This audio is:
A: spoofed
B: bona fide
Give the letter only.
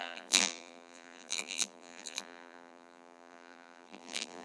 A